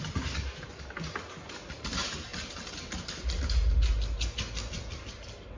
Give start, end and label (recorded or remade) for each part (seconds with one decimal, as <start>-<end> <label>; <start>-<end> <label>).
0.0-5.6 recorded